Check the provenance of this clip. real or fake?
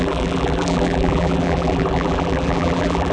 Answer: fake